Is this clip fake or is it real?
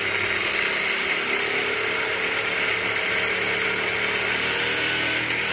real